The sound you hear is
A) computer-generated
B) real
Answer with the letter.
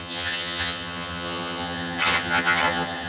A